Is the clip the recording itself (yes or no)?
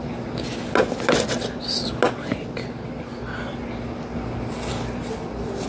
yes